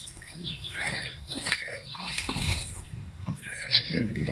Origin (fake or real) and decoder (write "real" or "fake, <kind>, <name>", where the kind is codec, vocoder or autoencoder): fake, codec, SNAC